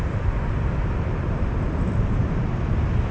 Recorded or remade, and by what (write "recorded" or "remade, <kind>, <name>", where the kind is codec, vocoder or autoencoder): recorded